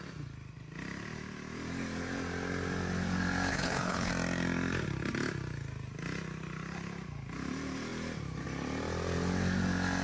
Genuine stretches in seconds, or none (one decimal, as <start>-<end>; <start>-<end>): 0.0-3.5; 4.1-10.0